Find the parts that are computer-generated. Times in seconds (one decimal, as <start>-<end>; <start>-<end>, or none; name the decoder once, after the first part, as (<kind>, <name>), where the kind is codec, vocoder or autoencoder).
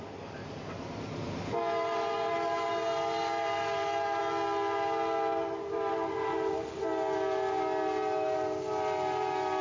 0.4-4.2 (vocoder, BigVGAN v2); 5.3-6.9